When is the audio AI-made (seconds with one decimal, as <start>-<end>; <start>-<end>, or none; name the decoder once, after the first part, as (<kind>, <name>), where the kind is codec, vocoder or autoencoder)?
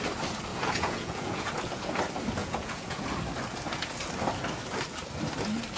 0.5-2.0 (vocoder, Vocos); 2.4-3.0